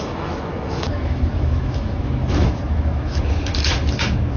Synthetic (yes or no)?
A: yes